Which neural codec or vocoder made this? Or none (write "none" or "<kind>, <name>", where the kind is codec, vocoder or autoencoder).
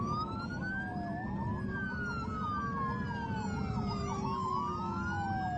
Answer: none